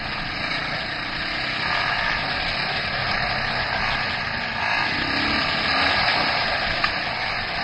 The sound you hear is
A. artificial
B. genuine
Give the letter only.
B